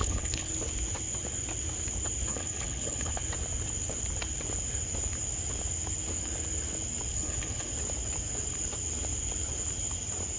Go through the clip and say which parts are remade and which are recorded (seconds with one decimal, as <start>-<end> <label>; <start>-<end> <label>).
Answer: 0.0-0.5 remade; 0.5-2.3 recorded; 2.3-3.2 remade; 3.2-7.1 recorded; 7.1-7.7 remade; 7.7-10.4 recorded